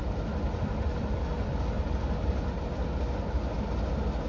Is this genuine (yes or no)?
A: yes